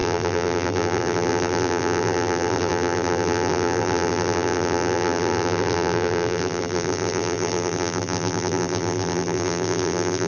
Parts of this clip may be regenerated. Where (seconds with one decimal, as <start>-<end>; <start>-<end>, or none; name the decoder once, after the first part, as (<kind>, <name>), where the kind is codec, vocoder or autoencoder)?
0.0-10.3 (vocoder, BigVGAN v2)